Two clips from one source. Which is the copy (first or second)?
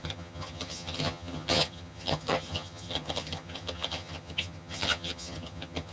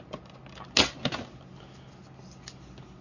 first